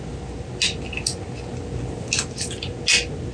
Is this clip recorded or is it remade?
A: recorded